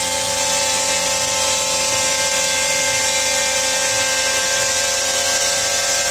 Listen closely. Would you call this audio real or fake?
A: real